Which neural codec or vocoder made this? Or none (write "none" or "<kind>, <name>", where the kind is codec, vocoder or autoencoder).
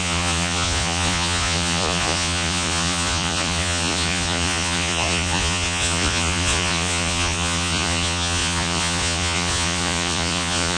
vocoder, Vocos